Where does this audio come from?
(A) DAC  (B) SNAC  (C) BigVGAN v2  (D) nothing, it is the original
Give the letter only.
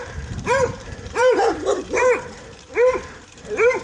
C